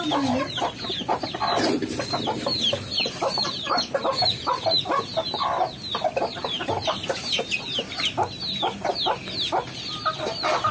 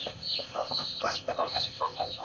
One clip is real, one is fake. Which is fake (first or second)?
second